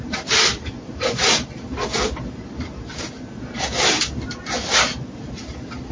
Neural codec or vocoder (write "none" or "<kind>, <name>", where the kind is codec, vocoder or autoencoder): none